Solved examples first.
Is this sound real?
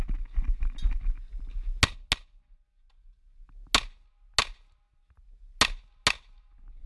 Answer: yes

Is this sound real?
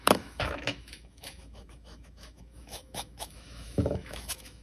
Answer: no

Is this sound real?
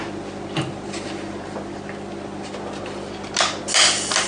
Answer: yes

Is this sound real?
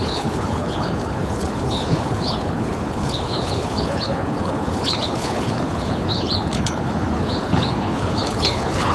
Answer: no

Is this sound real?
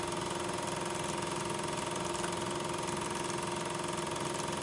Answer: yes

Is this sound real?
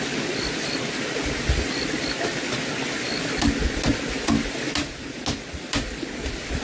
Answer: yes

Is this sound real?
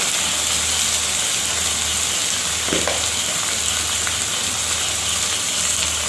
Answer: yes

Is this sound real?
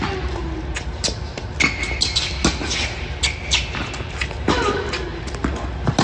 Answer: yes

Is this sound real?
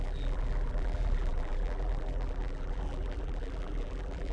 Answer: no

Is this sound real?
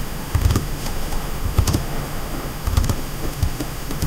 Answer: no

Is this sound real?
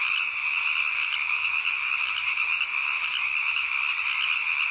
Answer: yes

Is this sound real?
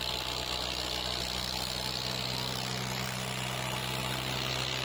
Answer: yes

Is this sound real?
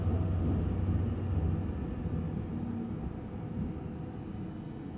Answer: yes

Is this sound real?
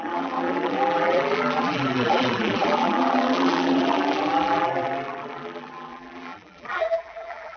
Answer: no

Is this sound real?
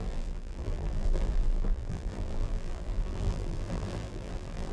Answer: no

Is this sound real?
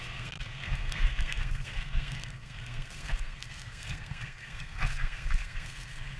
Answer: no